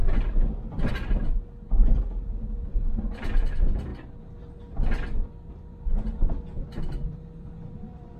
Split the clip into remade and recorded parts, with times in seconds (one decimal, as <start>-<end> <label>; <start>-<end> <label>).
0.0-3.9 remade; 3.9-5.5 recorded; 5.5-8.2 remade